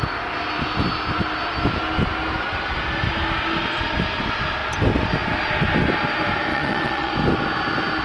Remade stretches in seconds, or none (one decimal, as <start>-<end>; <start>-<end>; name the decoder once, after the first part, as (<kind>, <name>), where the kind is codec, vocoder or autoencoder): 6.5-7.1 (vocoder, Vocos)